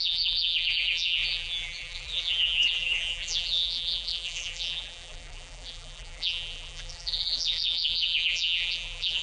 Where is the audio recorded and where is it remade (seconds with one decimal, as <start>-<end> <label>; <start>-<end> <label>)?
0.0-9.2 remade